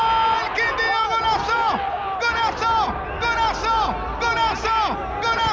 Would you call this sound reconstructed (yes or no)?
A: no